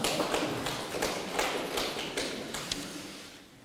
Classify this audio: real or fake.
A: real